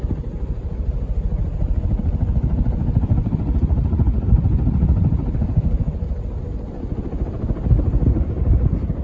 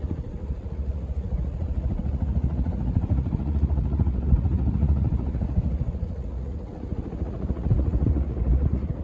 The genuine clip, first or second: first